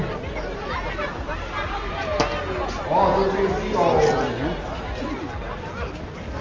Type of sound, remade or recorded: recorded